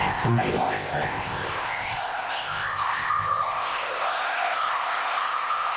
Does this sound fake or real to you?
fake